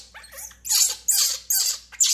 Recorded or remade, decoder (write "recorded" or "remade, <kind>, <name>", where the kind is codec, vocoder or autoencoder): recorded